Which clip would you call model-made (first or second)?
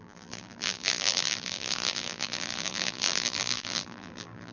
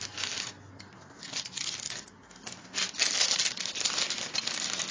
first